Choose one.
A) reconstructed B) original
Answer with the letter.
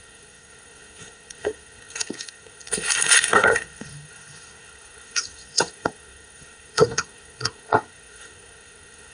A